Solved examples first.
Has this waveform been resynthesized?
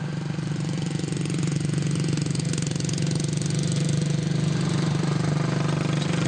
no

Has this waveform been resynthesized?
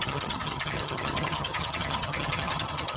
yes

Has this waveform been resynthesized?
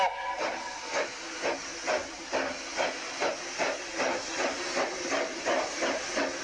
no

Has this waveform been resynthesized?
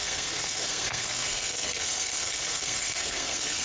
yes